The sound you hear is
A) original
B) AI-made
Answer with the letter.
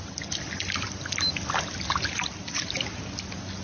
A